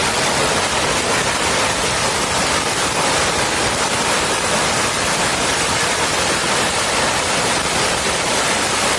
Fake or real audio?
real